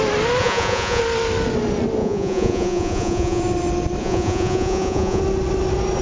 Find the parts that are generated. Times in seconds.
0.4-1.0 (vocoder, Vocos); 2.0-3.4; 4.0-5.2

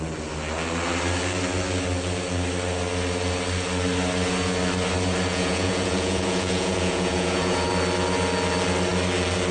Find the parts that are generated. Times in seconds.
5.3-7.7 (vocoder, Vocos)

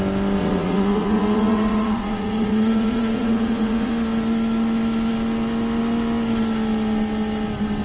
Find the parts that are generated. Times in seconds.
0.4-3.9 (vocoder, Vocos)

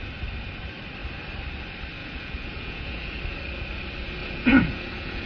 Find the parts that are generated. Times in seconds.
2.0-3.2 (vocoder, Vocos); 4.2-5.3